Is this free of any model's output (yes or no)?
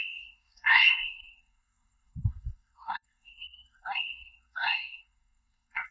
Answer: no